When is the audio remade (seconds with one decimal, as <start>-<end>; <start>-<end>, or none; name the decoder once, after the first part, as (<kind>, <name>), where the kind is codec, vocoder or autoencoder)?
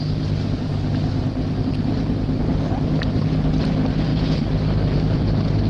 0.9-2.5 (vocoder, BigVGAN v2); 4.1-5.7